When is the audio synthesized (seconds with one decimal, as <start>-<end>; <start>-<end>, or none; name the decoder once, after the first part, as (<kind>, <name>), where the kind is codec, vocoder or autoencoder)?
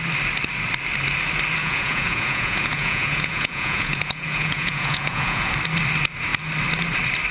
1.6-5.5 (vocoder, Vocos)